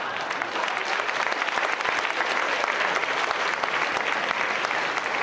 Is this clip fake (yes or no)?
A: no